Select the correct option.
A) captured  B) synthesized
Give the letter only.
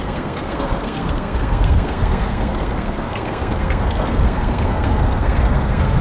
B